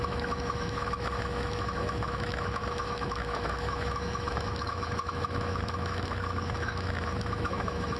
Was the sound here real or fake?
fake